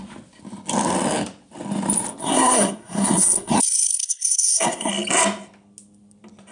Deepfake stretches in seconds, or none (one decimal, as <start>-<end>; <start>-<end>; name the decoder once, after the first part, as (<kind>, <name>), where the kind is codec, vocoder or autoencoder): 2.2-4.9 (codec, SNAC)